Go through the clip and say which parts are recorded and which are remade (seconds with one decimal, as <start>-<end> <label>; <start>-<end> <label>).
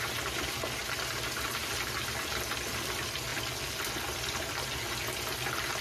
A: 0.0-5.8 recorded